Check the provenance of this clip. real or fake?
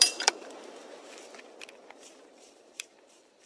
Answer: fake